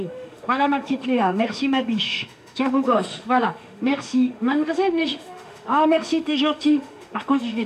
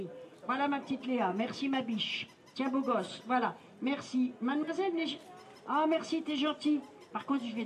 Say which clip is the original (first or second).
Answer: second